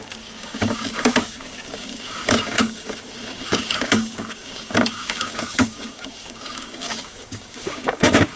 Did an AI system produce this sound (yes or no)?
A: yes